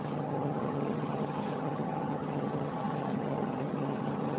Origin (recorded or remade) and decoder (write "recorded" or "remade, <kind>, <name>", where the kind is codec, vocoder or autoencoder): remade, vocoder, HiFi-GAN